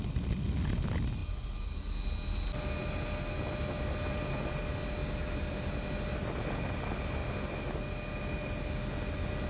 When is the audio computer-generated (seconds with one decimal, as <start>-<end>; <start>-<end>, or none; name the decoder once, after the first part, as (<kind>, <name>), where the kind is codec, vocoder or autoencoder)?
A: none